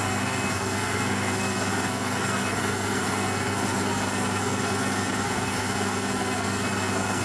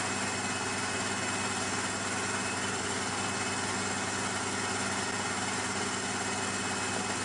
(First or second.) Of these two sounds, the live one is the second